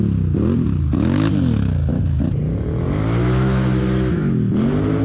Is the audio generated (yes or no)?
no